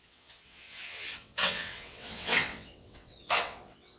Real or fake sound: fake